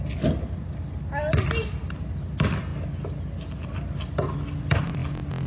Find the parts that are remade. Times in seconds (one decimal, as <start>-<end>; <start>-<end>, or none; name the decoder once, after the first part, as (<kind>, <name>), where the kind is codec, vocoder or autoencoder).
none